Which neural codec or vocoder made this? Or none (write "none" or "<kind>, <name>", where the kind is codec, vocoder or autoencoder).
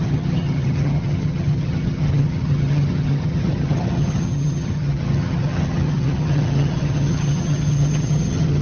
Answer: vocoder, HiFi-GAN